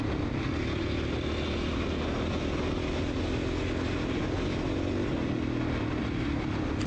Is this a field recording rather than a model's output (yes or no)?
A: yes